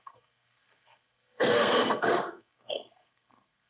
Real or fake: fake